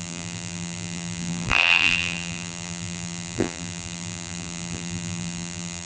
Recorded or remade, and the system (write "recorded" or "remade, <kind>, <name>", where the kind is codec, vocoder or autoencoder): remade, vocoder, BigVGAN v2